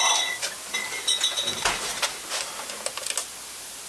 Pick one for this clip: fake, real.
real